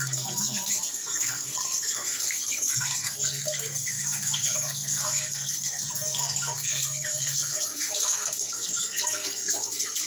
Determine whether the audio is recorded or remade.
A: remade